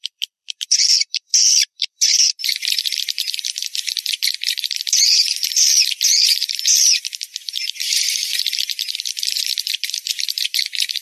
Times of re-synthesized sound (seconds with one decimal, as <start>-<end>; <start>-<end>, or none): 0.0-11.0